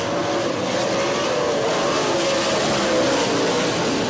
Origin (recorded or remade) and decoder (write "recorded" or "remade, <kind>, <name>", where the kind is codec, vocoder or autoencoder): recorded